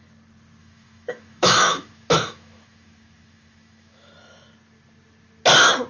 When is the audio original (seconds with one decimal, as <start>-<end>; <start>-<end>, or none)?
0.0-0.6; 4.1-5.9